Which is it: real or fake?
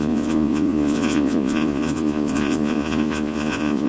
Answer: fake